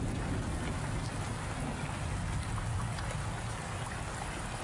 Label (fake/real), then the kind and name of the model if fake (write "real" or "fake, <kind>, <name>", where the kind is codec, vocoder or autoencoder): real